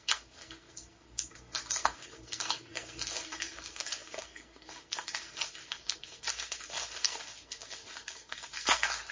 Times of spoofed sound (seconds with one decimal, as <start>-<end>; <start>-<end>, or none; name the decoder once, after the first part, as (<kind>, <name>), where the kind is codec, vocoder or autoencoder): 0.0-9.1 (codec, SNAC)

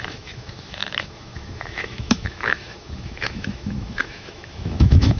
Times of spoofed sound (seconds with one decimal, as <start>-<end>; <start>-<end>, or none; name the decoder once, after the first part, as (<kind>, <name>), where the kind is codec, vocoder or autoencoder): 0.0-5.2 (autoencoder, DAC-VAE)

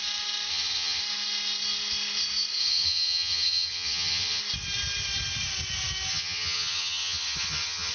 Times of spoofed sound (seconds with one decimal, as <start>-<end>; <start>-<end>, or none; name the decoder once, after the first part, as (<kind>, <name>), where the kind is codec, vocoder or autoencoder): 0.5-1.0 (vocoder, HiFi-GAN); 2.6-4.4; 6.1-7.9

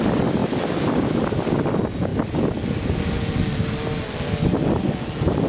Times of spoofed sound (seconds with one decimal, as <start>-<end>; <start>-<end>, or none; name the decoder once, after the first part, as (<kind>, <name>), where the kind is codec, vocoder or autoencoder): none

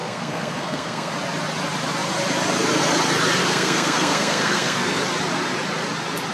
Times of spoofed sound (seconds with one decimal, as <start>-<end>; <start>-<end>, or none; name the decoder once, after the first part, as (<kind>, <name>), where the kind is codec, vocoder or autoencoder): 0.0-1.1 (codec, SNAC); 3.4-5.0